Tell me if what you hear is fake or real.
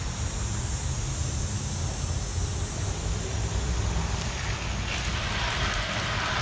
real